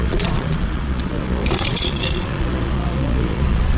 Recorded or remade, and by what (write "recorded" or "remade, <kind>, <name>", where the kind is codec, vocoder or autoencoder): remade, vocoder, Vocos